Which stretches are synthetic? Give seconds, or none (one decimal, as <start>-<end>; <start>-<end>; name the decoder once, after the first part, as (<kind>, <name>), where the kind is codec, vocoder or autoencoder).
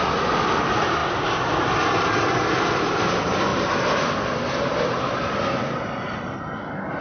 3.5-4.5 (vocoder, BigVGAN v2)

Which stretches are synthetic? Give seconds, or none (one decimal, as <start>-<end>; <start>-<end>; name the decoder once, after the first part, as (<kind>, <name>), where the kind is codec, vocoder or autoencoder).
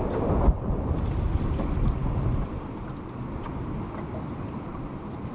2.0-2.7 (vocoder, BigVGAN v2); 4.7-5.3